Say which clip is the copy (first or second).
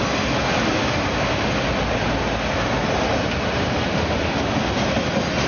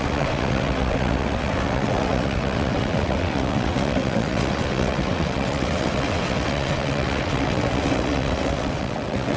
second